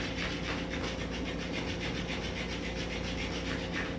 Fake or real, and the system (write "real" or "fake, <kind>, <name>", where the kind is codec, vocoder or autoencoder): real